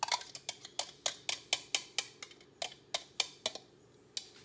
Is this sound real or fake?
real